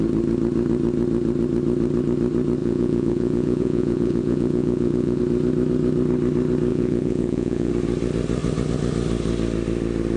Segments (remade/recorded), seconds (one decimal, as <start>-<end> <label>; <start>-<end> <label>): 0.0-2.6 recorded; 2.6-5.2 remade; 5.2-6.7 recorded; 6.7-7.7 remade; 7.7-10.2 recorded